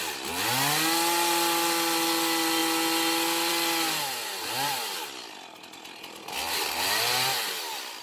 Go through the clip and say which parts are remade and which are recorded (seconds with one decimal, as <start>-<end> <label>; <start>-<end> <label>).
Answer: 0.0-8.0 recorded